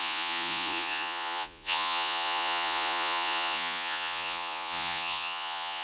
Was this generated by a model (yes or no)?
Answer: yes